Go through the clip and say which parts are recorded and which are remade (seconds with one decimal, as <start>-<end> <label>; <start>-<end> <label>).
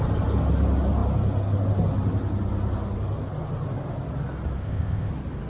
0.0-4.6 recorded; 4.6-5.1 remade; 5.1-5.5 recorded